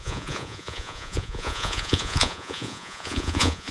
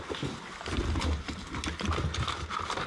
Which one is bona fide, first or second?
second